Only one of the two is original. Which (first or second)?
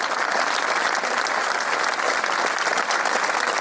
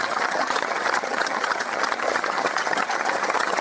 first